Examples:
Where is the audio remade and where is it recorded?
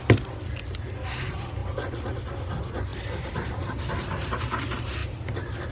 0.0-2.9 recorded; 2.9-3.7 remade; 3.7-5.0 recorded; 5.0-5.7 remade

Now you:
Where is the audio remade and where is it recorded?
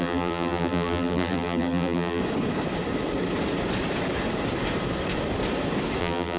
0.0-2.2 remade; 2.2-6.0 recorded; 6.0-6.4 remade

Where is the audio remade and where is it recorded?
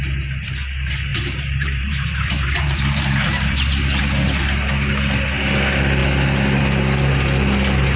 0.0-1.1 recorded; 1.1-4.0 remade; 4.0-8.0 recorded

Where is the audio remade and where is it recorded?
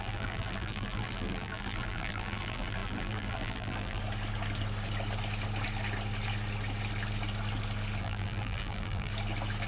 0.0-4.0 remade; 4.0-8.0 recorded; 8.0-9.1 remade; 9.1-9.7 recorded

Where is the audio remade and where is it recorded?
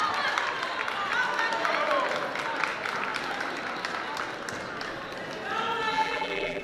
0.0-5.9 recorded; 5.9-6.6 remade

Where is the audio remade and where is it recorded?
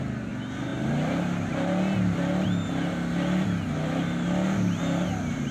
0.0-5.5 recorded